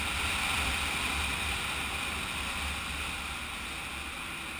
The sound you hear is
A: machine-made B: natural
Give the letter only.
B